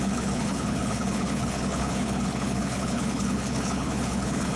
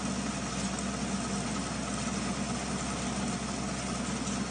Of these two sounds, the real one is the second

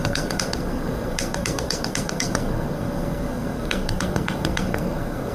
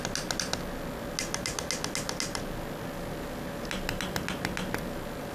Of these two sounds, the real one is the second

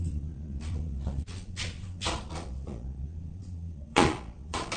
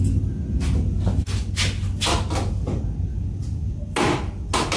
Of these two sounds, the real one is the second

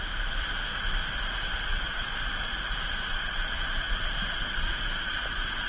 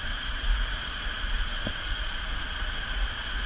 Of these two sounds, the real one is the first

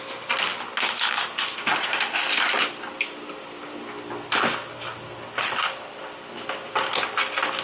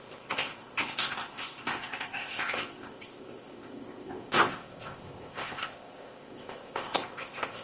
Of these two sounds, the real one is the first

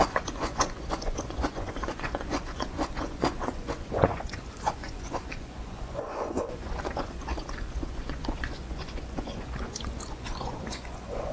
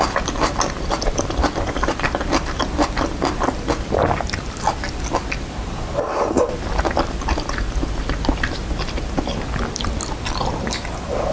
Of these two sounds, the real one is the second